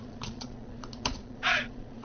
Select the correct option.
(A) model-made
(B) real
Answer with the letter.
A